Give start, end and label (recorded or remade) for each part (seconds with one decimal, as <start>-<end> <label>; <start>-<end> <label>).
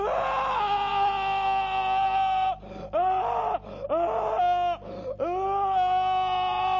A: 0.0-6.8 recorded